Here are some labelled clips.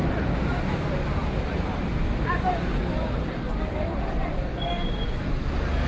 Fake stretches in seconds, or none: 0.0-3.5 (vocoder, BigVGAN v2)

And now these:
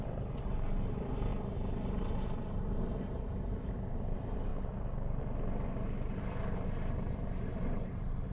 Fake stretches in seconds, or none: 0.0-4.5 (vocoder, BigVGAN v2); 6.2-8.3

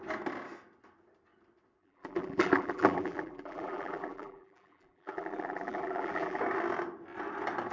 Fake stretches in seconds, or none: 1.8-6.4 (vocoder, BigVGAN v2)

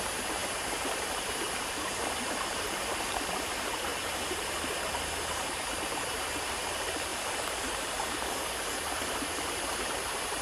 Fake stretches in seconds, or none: 0.0-3.9 (vocoder, BigVGAN v2); 6.1-10.4

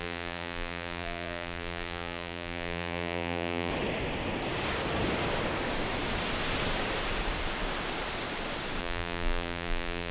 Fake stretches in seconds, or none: 0.0-3.7 (vocoder, BigVGAN v2); 8.8-10.1

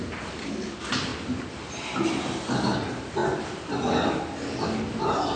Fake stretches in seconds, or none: none

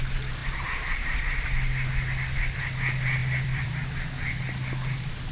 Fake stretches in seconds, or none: 0.4-1.2 (vocoder, BigVGAN v2); 3.2-3.7